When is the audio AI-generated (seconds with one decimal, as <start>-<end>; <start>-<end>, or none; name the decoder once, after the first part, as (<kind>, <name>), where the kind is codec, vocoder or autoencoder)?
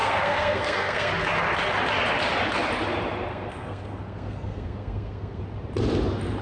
0.0-1.1 (codec, SNAC); 3.3-5.4